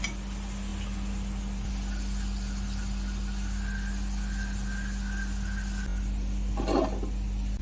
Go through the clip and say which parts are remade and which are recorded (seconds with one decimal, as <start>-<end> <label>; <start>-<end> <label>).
0.0-7.6 recorded